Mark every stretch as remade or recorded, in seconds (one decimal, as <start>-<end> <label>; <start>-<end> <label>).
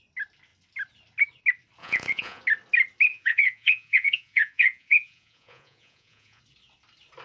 0.0-1.8 recorded; 1.8-2.4 remade; 2.4-3.1 recorded; 3.1-6.4 remade; 6.4-7.2 recorded